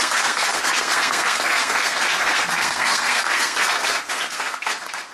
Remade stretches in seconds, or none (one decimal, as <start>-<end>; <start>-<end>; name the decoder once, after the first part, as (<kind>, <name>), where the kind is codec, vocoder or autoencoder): 0.0-5.1 (codec, SNAC)